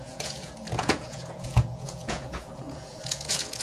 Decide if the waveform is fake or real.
fake